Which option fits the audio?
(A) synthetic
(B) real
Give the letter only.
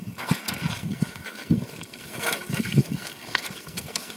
A